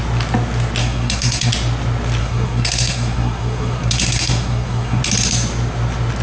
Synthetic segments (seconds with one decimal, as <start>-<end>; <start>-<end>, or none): 0.8-1.5; 2.2-5.0